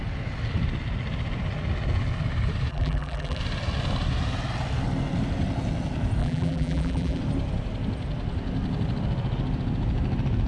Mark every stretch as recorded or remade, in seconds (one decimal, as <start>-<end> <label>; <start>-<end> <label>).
0.0-2.7 recorded; 2.7-3.4 remade; 3.4-6.2 recorded; 6.2-7.2 remade; 7.2-10.5 recorded